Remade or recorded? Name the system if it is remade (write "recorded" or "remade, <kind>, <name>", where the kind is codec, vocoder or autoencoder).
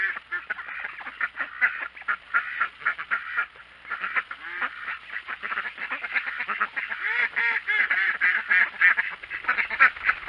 recorded